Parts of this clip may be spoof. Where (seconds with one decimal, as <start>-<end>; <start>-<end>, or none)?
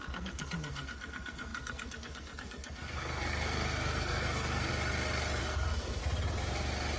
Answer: 0.0-4.7; 5.4-6.0